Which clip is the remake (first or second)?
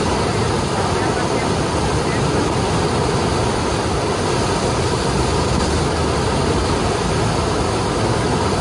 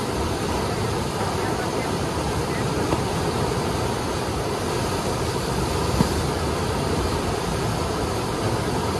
second